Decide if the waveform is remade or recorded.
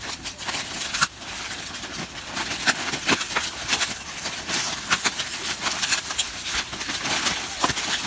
remade